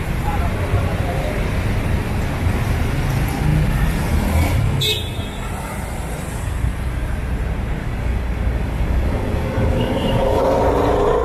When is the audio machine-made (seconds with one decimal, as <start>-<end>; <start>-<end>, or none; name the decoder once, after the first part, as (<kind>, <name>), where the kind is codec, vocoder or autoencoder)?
7.8-10.4 (codec, DAC)